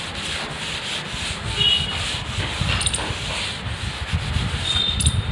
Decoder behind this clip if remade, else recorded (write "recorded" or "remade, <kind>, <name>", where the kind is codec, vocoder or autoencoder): recorded